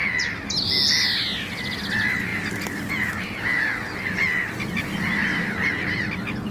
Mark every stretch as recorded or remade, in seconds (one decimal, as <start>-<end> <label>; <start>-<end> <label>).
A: 0.0-5.3 recorded; 5.3-6.0 remade; 6.0-6.5 recorded